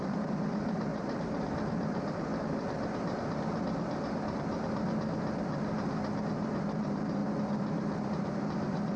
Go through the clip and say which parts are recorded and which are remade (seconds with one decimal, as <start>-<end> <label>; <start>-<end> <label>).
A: 0.0-2.3 remade; 2.3-6.3 recorded; 6.3-7.2 remade; 7.2-8.1 recorded; 8.1-9.0 remade